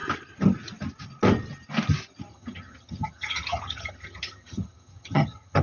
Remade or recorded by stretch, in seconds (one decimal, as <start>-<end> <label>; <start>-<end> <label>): 0.0-2.3 recorded; 2.3-5.6 remade

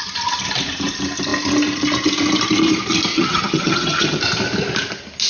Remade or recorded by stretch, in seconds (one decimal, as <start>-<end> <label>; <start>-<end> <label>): 0.0-3.1 recorded; 3.1-4.2 remade; 4.2-5.3 recorded

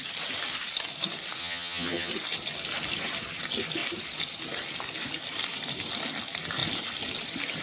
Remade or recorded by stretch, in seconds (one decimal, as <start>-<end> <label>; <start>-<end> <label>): 0.0-1.4 recorded; 1.4-2.1 remade; 2.1-7.6 recorded

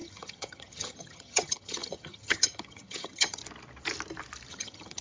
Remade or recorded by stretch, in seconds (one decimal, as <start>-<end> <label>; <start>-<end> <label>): 0.0-3.4 remade; 3.4-4.5 recorded; 4.5-5.0 remade

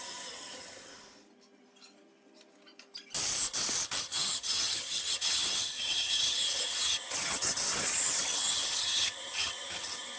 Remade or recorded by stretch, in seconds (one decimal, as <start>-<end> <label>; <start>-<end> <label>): 0.0-0.9 remade; 0.9-4.0 recorded; 4.0-10.2 remade

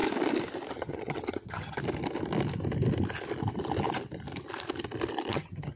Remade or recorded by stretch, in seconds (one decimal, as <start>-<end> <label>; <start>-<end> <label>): 0.0-0.7 recorded; 0.7-1.8 remade; 1.8-5.3 recorded; 5.3-5.8 remade

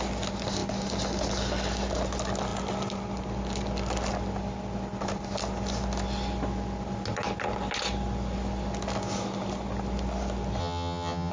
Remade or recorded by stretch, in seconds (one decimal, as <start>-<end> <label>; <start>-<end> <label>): 0.0-10.6 recorded; 10.6-11.3 remade

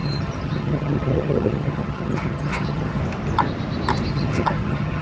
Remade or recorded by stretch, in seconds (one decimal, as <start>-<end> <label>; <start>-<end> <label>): 0.0-3.0 remade; 3.0-4.1 recorded; 4.1-5.0 remade